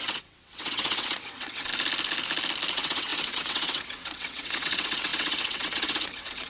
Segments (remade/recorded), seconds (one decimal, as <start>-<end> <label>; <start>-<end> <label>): 0.0-1.7 remade; 1.7-2.7 recorded; 2.7-6.5 remade